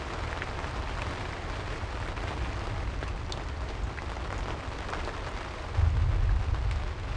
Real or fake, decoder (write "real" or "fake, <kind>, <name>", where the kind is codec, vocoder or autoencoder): real